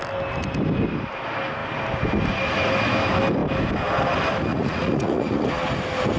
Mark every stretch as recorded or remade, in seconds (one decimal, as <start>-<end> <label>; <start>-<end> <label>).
0.0-4.5 recorded; 4.5-5.5 remade; 5.5-6.2 recorded